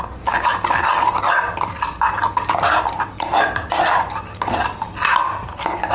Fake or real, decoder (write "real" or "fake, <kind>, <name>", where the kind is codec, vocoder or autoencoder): real